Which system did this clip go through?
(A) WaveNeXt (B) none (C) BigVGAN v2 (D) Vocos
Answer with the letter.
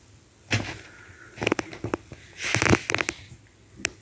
B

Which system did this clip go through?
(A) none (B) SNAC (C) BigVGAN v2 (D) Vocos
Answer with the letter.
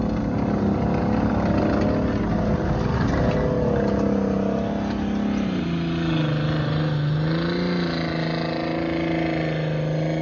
A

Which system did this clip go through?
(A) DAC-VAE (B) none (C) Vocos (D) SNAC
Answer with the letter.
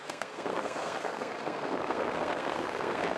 D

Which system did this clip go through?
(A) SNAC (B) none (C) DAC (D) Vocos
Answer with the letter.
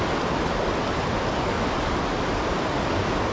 B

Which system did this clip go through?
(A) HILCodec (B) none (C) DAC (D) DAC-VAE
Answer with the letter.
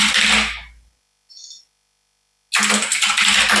B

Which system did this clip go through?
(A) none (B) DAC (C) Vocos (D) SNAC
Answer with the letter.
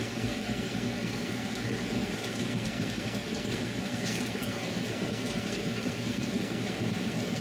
D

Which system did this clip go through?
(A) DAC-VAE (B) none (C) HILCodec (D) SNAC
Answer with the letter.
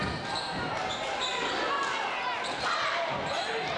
B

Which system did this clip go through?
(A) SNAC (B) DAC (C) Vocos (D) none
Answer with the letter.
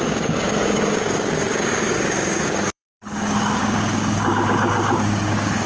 B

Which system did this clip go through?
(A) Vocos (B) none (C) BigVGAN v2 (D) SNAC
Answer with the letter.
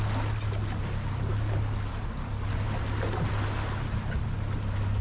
B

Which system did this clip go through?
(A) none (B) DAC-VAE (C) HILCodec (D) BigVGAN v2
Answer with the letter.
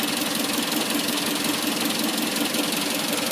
A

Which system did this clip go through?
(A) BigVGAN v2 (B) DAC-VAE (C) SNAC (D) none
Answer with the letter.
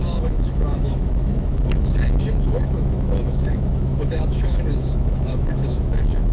B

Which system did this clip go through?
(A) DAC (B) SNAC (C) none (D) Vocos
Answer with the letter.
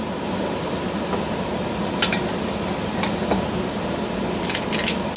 C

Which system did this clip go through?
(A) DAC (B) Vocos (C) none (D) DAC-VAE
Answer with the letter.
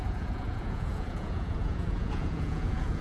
B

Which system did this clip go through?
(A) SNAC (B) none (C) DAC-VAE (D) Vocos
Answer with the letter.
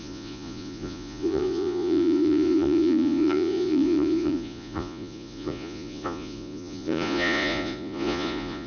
D